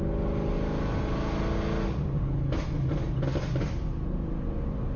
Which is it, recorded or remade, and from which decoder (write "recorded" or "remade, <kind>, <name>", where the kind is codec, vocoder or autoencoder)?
recorded